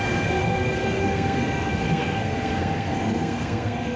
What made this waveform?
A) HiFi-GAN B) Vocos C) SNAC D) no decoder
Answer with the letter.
C